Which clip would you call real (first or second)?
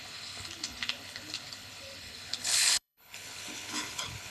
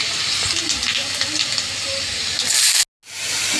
second